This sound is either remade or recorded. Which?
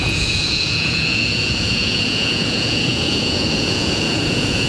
remade